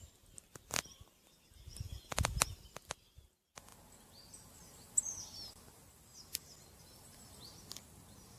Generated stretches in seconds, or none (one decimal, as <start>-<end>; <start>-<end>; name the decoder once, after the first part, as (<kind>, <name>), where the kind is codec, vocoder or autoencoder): none